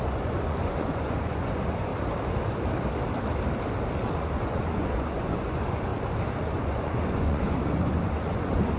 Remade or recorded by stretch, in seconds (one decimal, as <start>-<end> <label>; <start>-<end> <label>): 0.0-1.9 remade; 1.9-4.1 recorded; 4.1-5.9 remade; 5.9-6.4 recorded; 6.4-8.8 remade